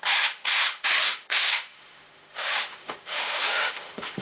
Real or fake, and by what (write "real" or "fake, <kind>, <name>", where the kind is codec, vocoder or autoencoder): fake, autoencoder, DAC-VAE